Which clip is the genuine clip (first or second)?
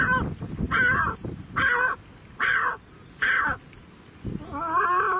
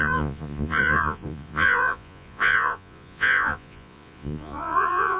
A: first